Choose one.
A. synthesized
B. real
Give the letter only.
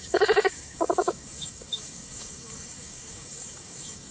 A